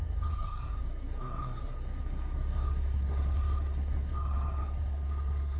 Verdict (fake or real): fake